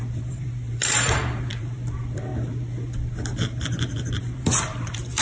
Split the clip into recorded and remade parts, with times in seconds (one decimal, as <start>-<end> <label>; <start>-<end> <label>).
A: 0.0-2.3 remade; 2.3-4.2 recorded; 4.2-5.2 remade